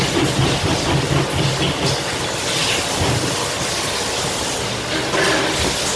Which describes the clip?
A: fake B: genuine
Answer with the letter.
B